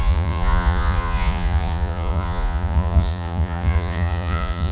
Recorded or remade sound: remade